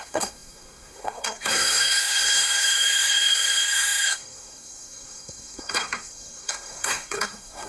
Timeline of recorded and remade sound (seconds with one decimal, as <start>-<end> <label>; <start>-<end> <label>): 0.0-7.7 remade